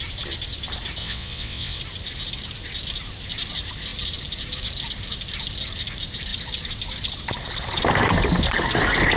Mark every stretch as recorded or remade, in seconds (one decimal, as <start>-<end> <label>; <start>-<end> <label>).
0.0-1.0 recorded; 1.0-1.8 remade; 1.8-9.2 recorded